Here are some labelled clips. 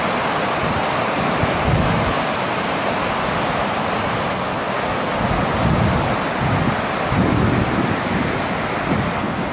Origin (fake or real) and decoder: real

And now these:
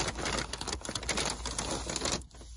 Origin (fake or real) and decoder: real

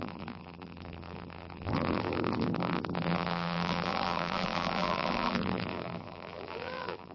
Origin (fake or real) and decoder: fake, vocoder, BigVGAN v2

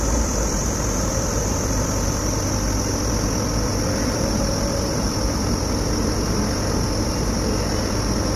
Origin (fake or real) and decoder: fake, vocoder, BigVGAN v2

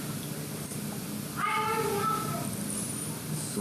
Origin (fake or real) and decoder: real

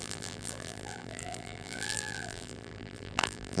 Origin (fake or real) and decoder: fake, vocoder, BigVGAN v2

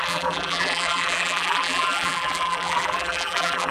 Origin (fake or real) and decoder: fake, vocoder, BigVGAN v2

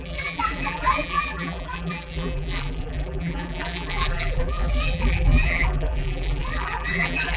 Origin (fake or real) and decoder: fake, vocoder, BigVGAN v2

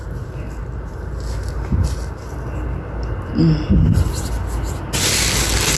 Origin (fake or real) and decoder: real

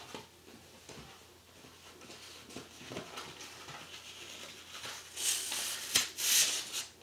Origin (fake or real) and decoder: real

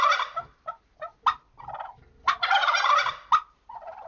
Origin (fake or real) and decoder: real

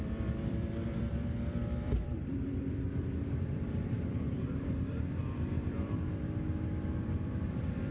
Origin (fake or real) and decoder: fake, vocoder, BigVGAN v2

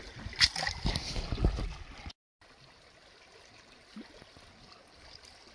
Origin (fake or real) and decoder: real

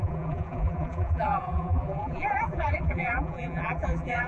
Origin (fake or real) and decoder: fake, vocoder, BigVGAN v2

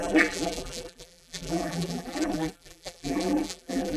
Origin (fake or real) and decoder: fake, vocoder, BigVGAN v2